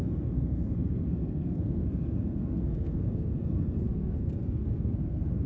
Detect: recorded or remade remade